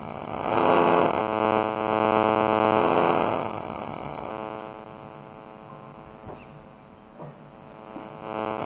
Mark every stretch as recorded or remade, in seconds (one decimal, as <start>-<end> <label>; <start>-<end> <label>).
0.0-1.2 remade; 1.2-2.8 recorded; 2.8-4.3 remade; 4.3-8.6 recorded